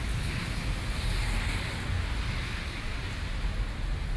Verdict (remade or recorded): recorded